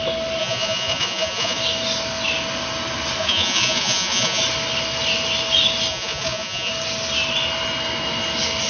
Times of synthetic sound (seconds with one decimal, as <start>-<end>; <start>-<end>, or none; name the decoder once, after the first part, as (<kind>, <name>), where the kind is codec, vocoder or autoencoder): 0.4-1.6 (vocoder, Vocos); 3.2-4.4; 5.9-6.7